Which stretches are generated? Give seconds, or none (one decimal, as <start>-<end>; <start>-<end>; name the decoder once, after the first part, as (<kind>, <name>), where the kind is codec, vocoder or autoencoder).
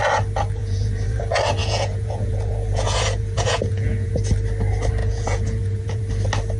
0.6-1.2 (vocoder, Vocos); 1.6-4.1; 5.0-6.0